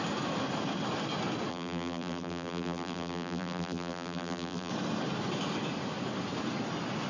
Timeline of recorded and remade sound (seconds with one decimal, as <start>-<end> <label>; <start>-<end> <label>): 0.0-1.5 recorded; 1.5-4.7 remade; 4.7-7.1 recorded